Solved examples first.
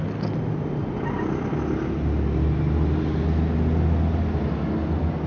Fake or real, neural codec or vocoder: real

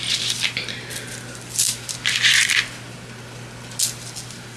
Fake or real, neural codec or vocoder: real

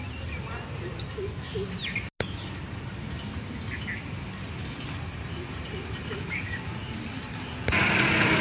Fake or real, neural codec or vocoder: real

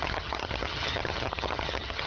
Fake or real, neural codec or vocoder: fake, vocoder, HiFi-GAN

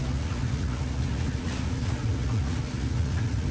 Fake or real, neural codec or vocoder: fake, vocoder, Vocos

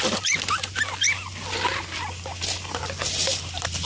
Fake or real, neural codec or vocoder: real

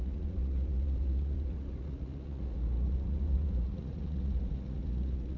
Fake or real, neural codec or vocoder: fake, vocoder, Vocos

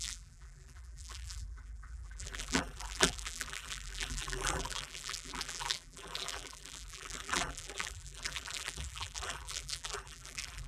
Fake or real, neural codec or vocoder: fake, vocoder, BigVGAN v2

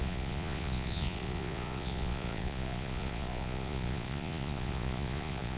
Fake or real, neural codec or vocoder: fake, vocoder, Vocos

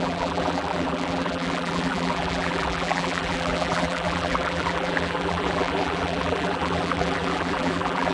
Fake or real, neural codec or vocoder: fake, vocoder, BigVGAN v2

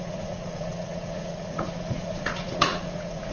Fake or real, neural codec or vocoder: fake, vocoder, Vocos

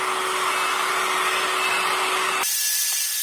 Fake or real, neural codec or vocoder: real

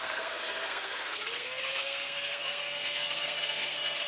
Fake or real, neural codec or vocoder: fake, codec, SNAC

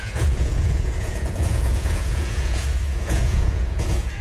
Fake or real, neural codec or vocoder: fake, vocoder, Vocos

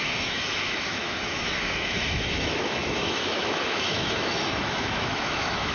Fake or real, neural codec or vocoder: fake, autoencoder, DAC-VAE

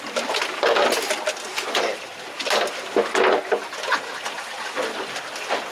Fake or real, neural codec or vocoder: real